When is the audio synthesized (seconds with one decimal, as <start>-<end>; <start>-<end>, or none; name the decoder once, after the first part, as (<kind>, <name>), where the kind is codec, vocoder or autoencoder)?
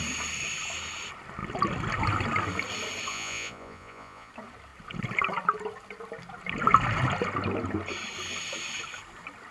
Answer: 3.1-4.3 (vocoder, Vocos)